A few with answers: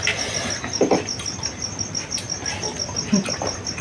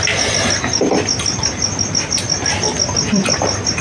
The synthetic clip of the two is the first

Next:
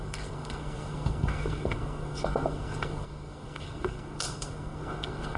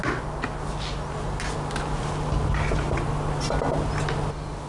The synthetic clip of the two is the first